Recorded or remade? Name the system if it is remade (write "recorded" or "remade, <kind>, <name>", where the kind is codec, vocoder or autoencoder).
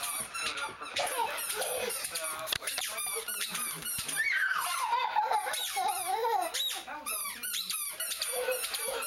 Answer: remade, vocoder, BigVGAN v2